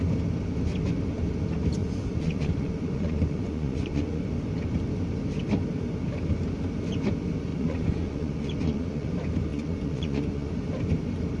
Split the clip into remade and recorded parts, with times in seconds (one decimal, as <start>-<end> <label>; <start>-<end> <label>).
0.0-1.8 recorded; 1.8-4.2 remade; 4.2-7.5 recorded; 7.5-9.1 remade; 9.1-9.5 recorded; 9.5-10.5 remade; 10.5-11.4 recorded